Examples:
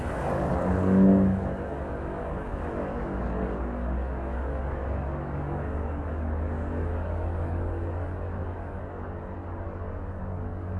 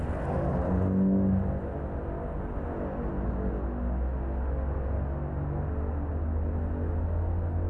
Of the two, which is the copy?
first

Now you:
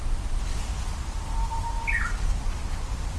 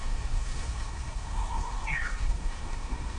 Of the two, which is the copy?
second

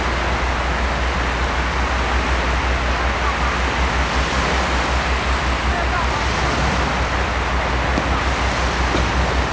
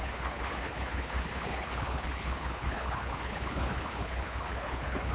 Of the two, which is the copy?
second